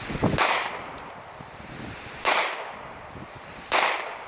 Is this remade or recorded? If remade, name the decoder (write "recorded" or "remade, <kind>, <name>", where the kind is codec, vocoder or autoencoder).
remade, vocoder, BigVGAN v2